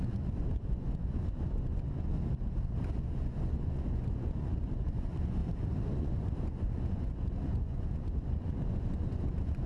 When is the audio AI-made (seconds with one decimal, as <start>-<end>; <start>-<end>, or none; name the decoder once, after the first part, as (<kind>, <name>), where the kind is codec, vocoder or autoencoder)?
0.0-2.1 (vocoder, Vocos); 3.0-5.4; 6.0-9.7

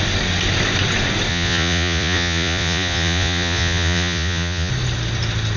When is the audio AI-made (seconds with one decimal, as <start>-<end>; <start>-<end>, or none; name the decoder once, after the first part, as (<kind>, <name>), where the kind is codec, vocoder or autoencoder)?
1.3-4.7 (vocoder, Vocos)

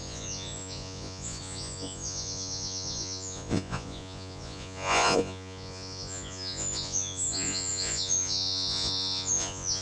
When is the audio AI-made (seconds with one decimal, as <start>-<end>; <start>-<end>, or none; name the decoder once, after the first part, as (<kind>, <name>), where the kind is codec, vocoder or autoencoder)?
0.0-9.8 (vocoder, Vocos)

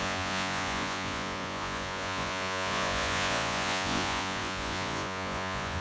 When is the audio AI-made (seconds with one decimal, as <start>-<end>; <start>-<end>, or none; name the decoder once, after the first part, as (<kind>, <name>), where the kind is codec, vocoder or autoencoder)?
0.0-5.8 (vocoder, Vocos)

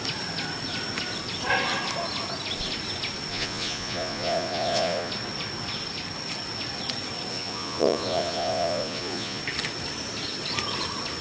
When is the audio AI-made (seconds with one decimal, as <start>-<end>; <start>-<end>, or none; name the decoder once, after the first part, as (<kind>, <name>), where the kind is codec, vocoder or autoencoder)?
3.3-5.1 (vocoder, Vocos); 7.3-9.4

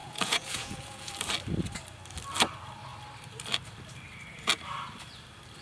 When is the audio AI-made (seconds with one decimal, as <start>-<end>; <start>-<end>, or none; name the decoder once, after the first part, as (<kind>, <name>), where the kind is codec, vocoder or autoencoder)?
0.0-1.1 (vocoder, Vocos)

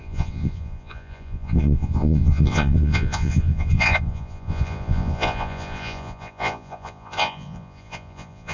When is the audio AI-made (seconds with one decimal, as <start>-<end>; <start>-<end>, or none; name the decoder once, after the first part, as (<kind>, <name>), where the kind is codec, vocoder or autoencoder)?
0.0-8.5 (vocoder, Vocos)